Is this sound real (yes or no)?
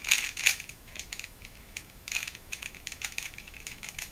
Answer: no